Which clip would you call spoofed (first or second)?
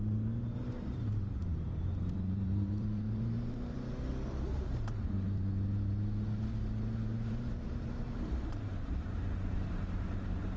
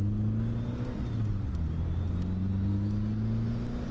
first